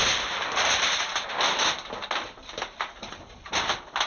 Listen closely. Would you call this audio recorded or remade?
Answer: recorded